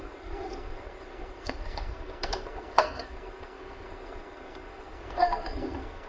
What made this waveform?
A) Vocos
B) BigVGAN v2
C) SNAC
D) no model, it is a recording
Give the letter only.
C